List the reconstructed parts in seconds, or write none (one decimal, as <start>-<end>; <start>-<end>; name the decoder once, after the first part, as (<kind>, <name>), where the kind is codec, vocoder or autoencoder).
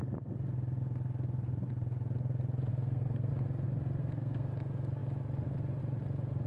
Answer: 2.7-3.3 (codec, SNAC); 4.0-4.5